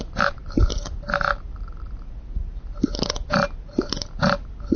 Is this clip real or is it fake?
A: real